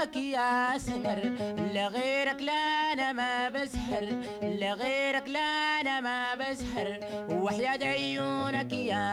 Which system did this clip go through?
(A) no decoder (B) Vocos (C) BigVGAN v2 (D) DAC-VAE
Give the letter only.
D